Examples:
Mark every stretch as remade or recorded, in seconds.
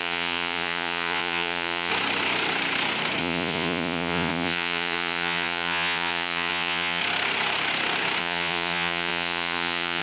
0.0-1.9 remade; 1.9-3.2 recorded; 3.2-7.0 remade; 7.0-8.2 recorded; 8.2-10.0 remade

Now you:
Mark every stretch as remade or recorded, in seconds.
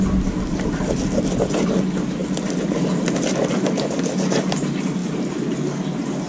0.0-6.3 recorded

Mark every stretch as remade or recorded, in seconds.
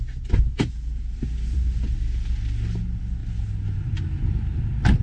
0.0-5.0 recorded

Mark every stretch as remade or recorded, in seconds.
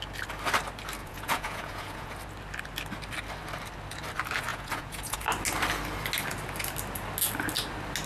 0.0-1.0 recorded; 1.0-2.1 remade; 2.1-4.5 recorded; 4.5-5.2 remade; 5.2-8.1 recorded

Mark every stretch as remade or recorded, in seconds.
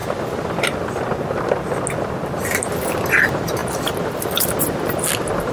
0.0-5.5 recorded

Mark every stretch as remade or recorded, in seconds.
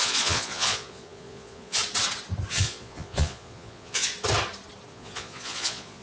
0.0-1.8 remade; 1.8-2.5 recorded; 2.5-4.1 remade; 4.1-4.9 recorded; 4.9-6.0 remade